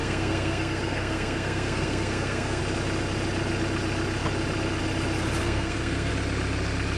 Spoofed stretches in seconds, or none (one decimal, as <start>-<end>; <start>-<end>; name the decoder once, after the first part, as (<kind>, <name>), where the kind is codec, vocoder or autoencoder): 0.0-2.6 (codec, SNAC); 5.4-6.1